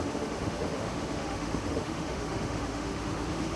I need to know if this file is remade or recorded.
remade